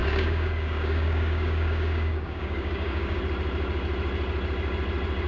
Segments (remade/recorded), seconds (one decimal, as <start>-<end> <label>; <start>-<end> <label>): 0.0-3.2 remade; 3.2-5.3 recorded